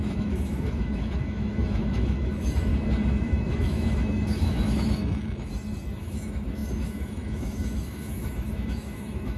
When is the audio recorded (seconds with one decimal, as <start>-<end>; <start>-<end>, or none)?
2.7-3.2; 5.5-6.0